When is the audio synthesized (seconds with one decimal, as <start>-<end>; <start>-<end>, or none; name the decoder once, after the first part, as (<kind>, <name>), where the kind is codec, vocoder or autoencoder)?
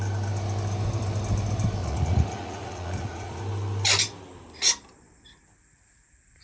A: 1.8-3.4 (vocoder, Vocos)